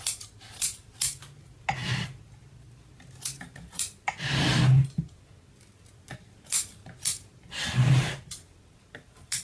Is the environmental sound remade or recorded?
recorded